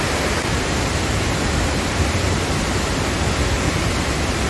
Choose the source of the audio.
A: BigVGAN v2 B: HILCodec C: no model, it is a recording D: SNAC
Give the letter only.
C